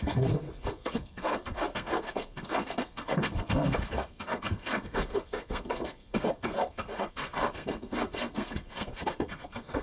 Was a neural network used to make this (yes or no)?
yes